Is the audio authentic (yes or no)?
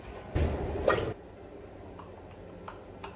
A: yes